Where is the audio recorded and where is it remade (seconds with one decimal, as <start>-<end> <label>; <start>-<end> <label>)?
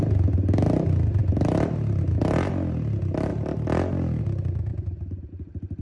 0.0-1.2 recorded; 1.2-2.0 remade; 2.0-4.7 recorded; 4.7-5.3 remade; 5.3-5.8 recorded